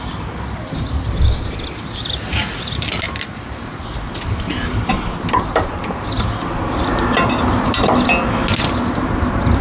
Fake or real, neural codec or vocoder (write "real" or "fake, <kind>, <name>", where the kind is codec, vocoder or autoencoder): real